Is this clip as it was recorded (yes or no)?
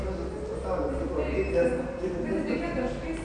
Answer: yes